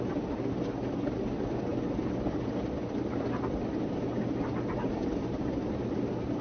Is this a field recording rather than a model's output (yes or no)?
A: yes